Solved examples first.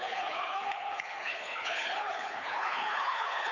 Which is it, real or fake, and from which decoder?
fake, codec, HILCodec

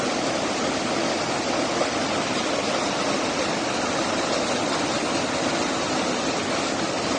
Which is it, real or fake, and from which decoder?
real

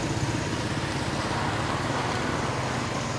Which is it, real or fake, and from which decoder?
real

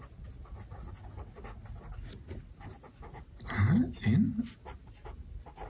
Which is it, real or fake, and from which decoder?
real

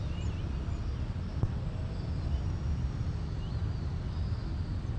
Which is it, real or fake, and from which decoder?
real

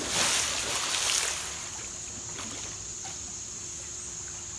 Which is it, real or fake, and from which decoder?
real